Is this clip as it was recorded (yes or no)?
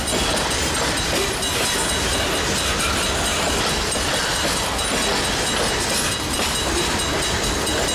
yes